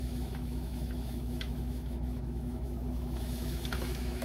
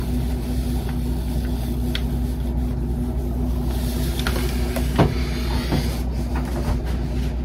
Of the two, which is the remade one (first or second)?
first